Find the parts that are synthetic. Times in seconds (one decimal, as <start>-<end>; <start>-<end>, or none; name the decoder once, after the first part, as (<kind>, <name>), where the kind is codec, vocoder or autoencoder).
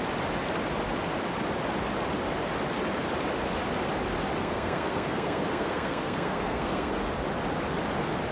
4.4-6.9 (codec, SNAC)